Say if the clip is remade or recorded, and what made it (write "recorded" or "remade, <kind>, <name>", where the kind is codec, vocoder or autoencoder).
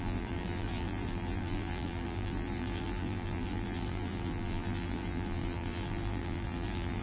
remade, vocoder, BigVGAN v2